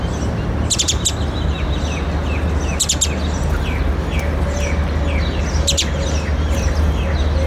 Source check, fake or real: real